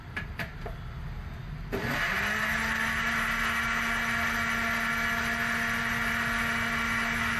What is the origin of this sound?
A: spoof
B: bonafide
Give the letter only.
B